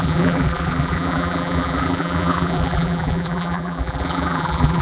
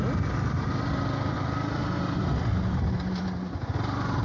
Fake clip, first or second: first